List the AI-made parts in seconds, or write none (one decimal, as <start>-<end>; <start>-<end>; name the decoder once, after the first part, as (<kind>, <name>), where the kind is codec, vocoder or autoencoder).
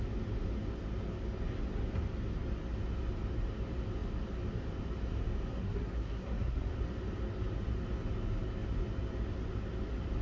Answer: 5.5-6.7 (codec, SNAC)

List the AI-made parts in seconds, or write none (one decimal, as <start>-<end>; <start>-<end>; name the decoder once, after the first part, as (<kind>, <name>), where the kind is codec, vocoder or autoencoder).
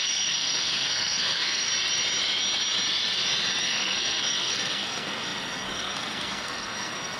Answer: 0.0-1.7 (codec, SNAC); 3.6-7.2